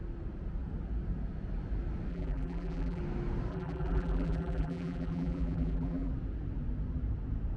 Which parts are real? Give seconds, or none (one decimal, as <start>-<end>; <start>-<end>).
0.0-2.1; 3.0-3.5; 6.1-7.6